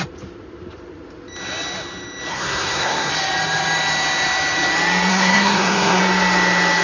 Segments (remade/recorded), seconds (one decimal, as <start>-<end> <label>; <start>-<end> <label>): 0.0-2.3 recorded; 2.3-3.1 remade; 3.1-5.1 recorded; 5.1-6.0 remade; 6.0-6.8 recorded